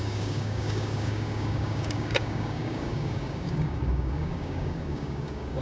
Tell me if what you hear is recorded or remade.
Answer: remade